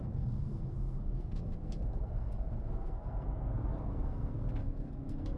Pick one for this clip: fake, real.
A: fake